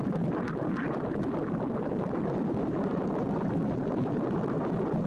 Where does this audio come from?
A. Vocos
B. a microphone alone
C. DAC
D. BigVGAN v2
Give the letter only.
B